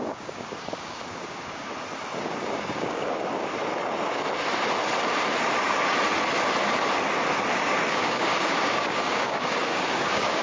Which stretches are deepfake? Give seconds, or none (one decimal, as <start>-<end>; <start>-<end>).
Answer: 0.0-1.7; 2.2-3.5; 7.9-10.4